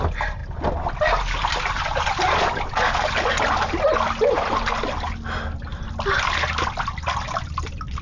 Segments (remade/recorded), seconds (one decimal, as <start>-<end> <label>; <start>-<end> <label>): 0.0-8.0 recorded